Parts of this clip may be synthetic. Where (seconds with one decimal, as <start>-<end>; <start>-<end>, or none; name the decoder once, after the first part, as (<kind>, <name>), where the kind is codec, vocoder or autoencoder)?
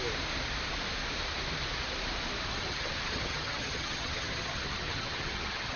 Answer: 2.5-5.8 (vocoder, HiFi-GAN)